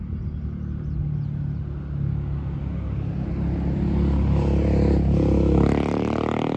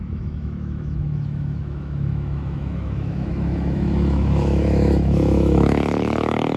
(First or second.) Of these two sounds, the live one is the first